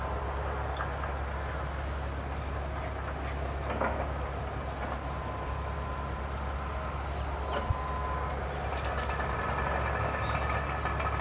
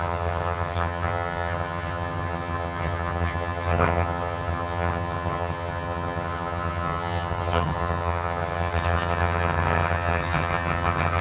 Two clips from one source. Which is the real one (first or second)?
first